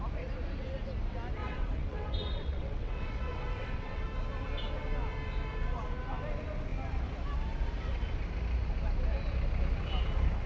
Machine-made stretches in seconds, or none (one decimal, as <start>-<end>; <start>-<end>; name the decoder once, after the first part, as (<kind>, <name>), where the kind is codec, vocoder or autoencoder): 1.4-4.0 (vocoder, WaveNeXt)